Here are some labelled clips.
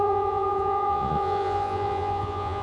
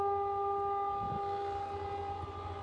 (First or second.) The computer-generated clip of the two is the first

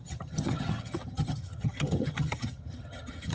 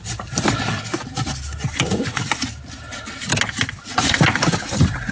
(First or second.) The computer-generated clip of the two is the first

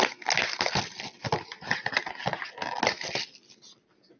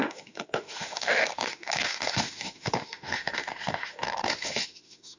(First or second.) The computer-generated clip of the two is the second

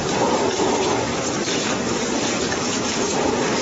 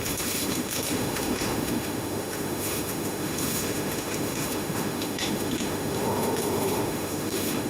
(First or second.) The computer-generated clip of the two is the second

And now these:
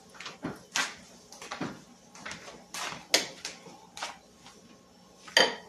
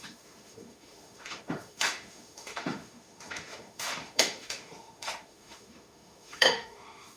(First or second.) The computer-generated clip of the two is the second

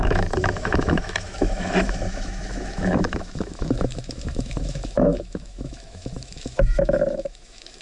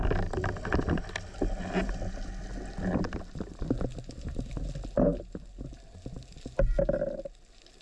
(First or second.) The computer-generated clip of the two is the first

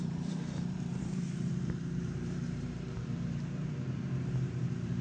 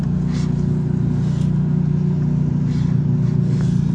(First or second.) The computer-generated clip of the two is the first